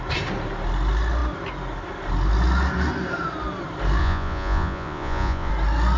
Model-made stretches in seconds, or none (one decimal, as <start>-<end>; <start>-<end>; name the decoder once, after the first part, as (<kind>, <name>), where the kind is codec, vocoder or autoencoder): 4.0-5.5 (vocoder, Vocos)

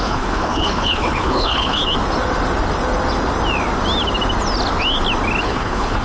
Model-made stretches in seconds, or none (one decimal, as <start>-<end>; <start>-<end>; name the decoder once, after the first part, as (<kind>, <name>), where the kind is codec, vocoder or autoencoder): 0.0-1.8 (codec, HILCodec); 5.4-6.0

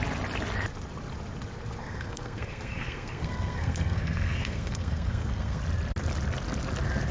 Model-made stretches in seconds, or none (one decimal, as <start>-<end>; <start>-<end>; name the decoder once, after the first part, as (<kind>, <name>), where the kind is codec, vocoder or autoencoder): 1.8-5.6 (codec, SNAC)

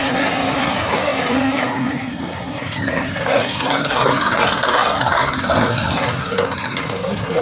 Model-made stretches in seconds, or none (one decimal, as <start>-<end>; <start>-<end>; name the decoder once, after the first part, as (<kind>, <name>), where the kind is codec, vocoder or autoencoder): 0.0-7.4 (codec, SNAC)

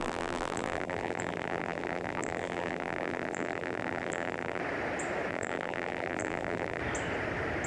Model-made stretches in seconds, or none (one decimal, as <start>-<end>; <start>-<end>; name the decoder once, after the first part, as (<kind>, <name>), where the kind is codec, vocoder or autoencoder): 0.0-4.6 (vocoder, BigVGAN v2); 5.3-6.8

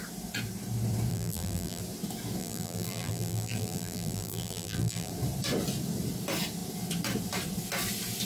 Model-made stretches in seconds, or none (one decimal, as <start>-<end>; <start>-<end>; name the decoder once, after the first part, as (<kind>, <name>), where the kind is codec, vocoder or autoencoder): 1.1-1.8 (vocoder, BigVGAN v2); 2.4-5.1